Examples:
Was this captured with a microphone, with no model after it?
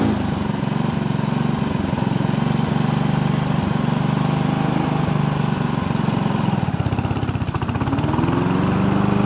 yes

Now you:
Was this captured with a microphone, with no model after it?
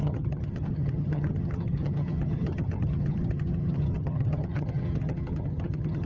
no